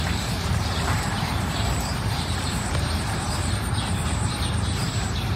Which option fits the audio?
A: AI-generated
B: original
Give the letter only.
A